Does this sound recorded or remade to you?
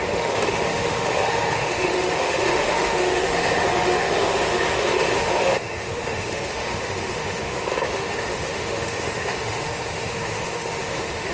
remade